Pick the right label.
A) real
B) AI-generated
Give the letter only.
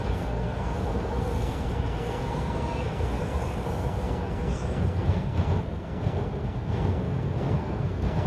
B